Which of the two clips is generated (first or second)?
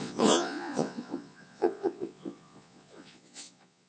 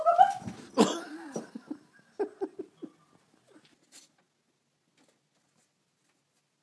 first